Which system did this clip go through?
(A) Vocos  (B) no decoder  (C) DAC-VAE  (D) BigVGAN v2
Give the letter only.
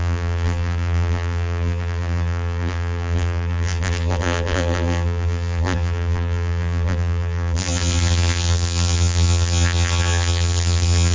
D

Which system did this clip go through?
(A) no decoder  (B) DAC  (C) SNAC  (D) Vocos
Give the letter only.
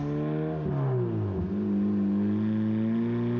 A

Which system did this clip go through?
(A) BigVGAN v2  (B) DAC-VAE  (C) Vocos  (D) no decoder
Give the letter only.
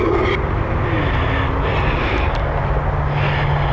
D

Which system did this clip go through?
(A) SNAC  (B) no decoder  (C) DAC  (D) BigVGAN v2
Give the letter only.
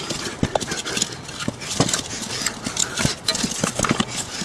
B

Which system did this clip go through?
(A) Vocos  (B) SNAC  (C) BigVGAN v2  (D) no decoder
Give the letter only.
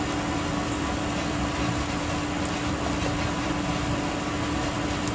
D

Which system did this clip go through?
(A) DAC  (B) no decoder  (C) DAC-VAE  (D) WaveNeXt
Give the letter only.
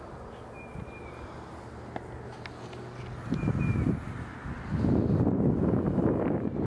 B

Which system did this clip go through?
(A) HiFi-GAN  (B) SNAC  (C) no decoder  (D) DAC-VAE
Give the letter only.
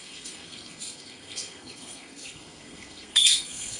B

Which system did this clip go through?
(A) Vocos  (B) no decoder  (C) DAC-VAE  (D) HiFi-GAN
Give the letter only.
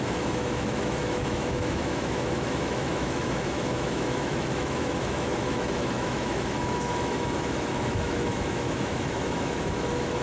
C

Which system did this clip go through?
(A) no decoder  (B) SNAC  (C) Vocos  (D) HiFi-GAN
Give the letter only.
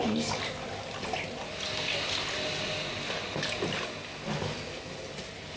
A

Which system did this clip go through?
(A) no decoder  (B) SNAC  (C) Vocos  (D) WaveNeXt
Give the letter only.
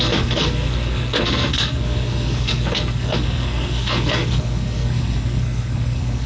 B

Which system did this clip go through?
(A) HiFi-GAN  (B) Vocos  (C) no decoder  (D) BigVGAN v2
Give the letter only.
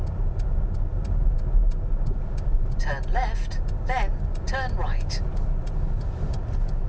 C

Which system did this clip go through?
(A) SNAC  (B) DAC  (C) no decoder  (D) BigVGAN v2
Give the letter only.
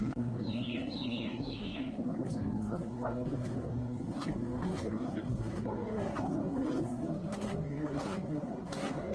A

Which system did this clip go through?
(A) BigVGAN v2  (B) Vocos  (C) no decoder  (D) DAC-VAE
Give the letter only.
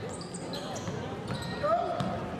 C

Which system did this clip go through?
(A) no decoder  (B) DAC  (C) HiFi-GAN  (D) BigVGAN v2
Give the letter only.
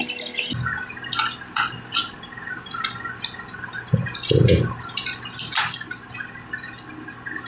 A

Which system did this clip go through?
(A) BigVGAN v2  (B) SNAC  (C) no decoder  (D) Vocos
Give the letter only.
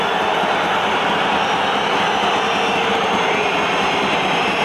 C